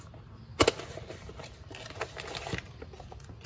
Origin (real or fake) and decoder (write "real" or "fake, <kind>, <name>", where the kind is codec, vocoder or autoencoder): real